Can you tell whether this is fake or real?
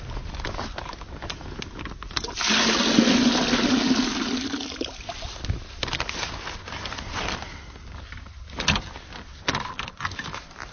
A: real